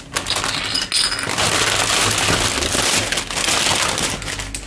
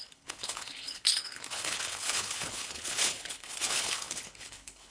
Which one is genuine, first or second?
first